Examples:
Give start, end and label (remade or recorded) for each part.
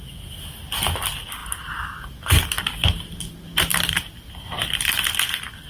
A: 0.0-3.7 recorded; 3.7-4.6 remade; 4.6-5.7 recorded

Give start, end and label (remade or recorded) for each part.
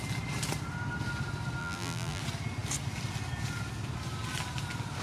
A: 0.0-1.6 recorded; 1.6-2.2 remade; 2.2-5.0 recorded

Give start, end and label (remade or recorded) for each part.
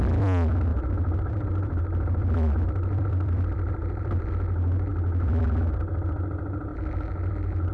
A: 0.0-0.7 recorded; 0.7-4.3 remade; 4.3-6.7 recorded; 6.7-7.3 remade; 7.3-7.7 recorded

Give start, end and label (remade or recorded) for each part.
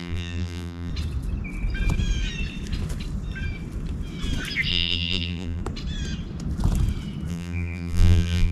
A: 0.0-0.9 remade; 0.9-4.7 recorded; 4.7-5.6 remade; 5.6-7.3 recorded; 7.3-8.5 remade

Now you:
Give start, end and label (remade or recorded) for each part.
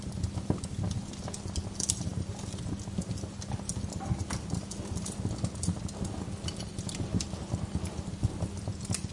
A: 0.0-9.1 recorded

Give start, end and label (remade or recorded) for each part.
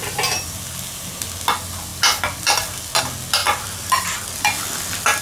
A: 0.0-5.2 recorded